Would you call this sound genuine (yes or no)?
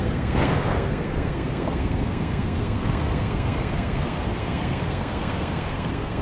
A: no